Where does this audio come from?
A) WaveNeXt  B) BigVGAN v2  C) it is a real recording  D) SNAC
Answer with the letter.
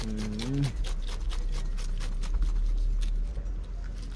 C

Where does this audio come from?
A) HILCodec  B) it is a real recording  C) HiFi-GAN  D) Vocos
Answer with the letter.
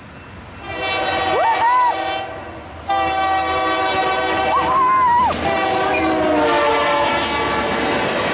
B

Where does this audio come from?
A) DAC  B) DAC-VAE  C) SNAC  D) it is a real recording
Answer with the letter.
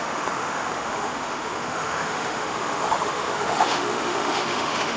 B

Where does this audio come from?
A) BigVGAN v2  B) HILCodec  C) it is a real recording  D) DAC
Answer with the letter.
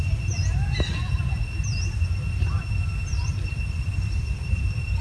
A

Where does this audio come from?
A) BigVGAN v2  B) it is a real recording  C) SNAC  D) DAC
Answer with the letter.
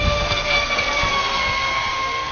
C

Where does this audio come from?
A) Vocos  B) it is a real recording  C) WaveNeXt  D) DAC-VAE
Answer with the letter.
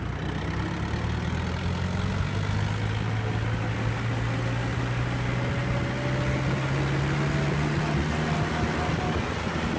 B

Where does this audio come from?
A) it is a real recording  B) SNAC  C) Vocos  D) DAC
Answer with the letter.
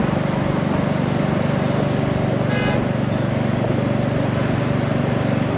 A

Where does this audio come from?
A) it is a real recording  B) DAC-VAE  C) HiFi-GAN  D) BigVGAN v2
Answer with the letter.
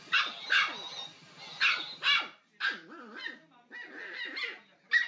A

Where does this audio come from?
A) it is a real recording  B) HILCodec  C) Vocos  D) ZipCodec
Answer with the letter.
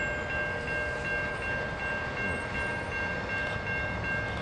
A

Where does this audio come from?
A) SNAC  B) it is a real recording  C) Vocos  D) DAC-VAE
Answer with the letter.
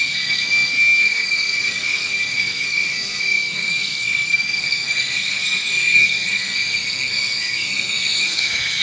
A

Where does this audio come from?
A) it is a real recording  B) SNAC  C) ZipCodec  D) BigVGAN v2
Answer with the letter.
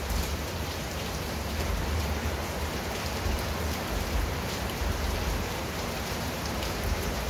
D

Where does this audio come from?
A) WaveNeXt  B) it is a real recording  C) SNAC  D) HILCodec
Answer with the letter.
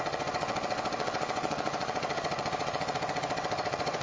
A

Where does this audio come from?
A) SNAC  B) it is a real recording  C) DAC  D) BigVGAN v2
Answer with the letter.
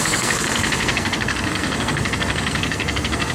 A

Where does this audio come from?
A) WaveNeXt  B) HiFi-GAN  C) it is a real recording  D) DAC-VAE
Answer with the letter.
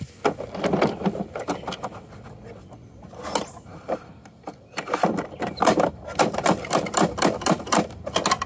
C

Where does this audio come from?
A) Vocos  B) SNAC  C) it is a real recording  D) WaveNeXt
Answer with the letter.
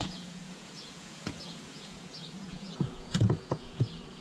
A